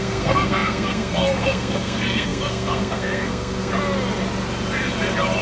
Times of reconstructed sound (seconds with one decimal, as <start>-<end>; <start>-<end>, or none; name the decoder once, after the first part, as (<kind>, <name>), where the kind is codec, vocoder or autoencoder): 0.0-3.7 (codec, SNAC)